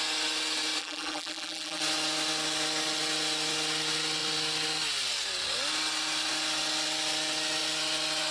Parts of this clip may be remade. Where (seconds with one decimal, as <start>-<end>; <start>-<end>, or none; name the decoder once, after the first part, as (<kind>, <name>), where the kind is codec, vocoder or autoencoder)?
0.8-1.8 (vocoder, BigVGAN v2)